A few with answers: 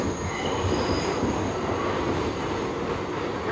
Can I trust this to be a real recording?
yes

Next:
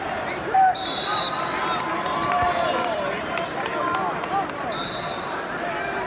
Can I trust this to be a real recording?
no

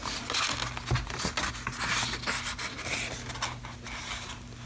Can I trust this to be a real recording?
yes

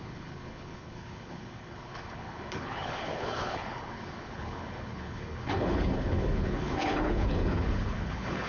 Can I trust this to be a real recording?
no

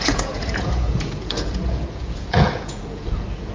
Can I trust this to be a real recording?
no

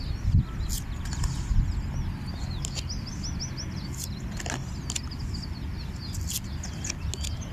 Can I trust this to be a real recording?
yes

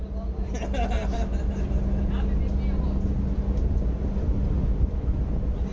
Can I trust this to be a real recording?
yes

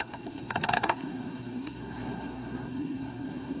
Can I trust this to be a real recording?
no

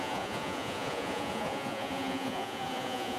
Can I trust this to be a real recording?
no